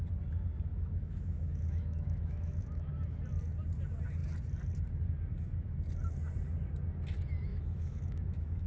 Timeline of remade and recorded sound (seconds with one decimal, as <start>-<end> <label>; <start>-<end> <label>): 0.0-0.7 recorded; 0.7-2.9 remade; 2.9-7.5 recorded; 7.5-8.7 remade